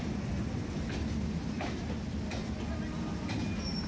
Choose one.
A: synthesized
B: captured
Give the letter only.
B